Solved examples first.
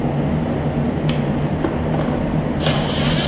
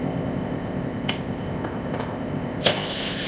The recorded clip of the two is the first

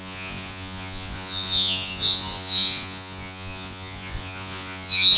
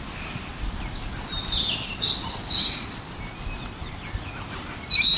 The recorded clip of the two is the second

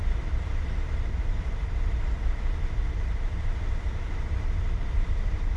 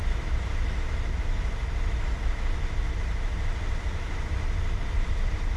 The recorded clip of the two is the second